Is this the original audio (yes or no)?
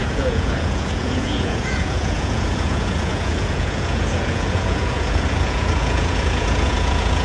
no